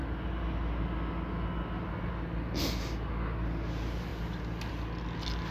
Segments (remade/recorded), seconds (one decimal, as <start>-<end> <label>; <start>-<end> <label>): 0.0-5.5 recorded